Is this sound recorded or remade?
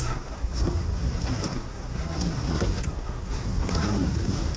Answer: remade